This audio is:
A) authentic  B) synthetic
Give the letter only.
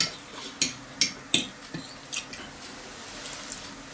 A